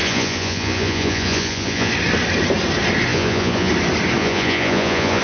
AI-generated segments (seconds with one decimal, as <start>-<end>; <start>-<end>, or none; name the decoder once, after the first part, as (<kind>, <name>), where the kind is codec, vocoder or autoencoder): 0.0-1.9 (vocoder, Vocos); 3.1-3.7; 4.2-5.2